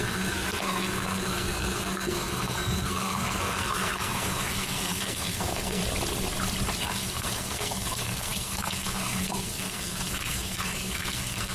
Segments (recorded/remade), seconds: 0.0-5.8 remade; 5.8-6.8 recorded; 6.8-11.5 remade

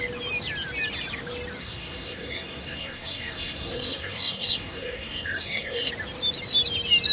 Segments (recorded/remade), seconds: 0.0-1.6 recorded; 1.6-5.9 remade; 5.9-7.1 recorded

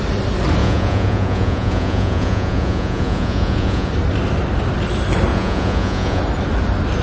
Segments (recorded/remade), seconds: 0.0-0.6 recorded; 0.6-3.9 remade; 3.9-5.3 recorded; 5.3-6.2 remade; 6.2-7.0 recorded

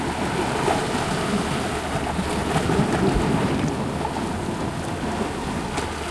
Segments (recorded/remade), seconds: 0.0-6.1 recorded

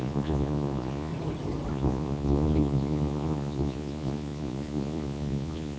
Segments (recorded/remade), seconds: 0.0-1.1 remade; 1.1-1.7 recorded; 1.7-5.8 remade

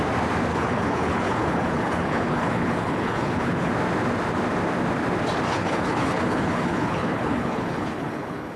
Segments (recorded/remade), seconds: 0.0-0.5 recorded; 0.5-3.7 remade; 3.7-5.5 recorded; 5.5-8.6 remade